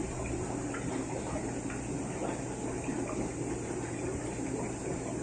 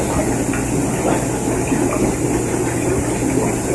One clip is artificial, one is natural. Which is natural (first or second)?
second